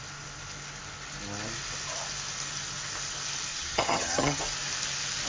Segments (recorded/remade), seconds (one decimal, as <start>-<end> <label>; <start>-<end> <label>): 0.0-3.5 recorded; 3.5-4.4 remade; 4.4-5.3 recorded